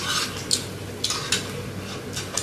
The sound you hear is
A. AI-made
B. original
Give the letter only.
B